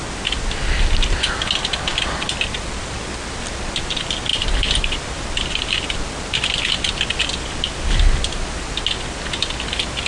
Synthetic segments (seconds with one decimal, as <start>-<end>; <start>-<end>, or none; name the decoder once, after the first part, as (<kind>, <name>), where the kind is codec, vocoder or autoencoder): 4.3-5.9 (vocoder, BigVGAN v2)